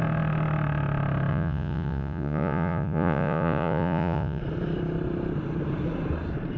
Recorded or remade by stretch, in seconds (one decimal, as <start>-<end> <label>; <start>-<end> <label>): 0.0-1.3 recorded; 1.3-4.4 remade; 4.4-6.6 recorded